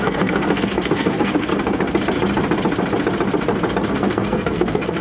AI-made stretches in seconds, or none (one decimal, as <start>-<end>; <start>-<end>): 0.0-1.5; 3.9-5.0